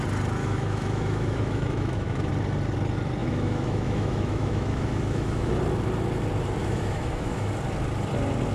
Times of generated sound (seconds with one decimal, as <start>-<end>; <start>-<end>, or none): 0.4-2.3; 3.2-5.5; 6.6-7.5